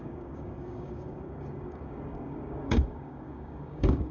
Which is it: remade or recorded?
remade